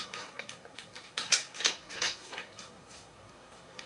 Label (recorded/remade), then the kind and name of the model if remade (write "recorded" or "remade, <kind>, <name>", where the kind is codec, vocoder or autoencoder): remade, codec, SNAC